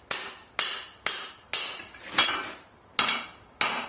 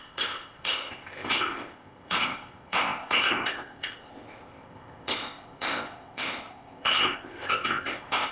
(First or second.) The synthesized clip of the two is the second